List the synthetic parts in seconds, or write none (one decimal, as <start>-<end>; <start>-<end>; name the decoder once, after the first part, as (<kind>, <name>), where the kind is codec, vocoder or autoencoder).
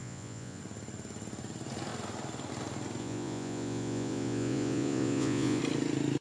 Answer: 0.0-0.6 (vocoder, Vocos); 3.0-5.6